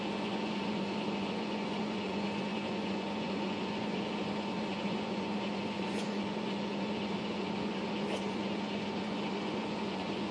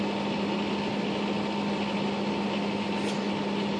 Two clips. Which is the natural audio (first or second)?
second